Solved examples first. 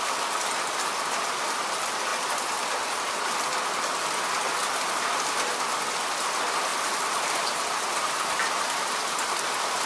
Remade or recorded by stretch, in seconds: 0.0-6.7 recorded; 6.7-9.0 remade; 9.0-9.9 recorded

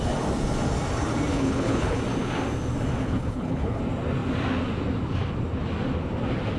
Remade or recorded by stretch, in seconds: 0.0-1.3 recorded; 1.3-2.0 remade; 2.0-3.0 recorded; 3.0-3.8 remade; 3.8-6.6 recorded

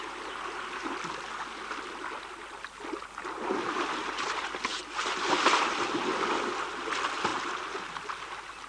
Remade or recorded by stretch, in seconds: 0.0-8.7 recorded

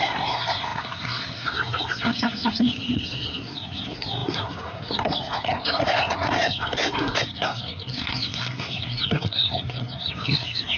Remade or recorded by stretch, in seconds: 0.0-10.8 remade

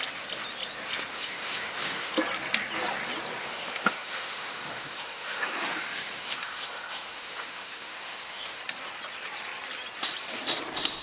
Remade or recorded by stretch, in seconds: 0.0-1.1 recorded; 1.1-2.1 remade; 2.1-3.4 recorded; 3.4-8.6 remade; 8.6-11.0 recorded